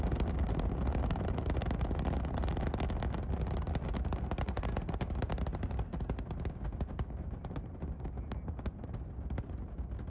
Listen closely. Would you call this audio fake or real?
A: real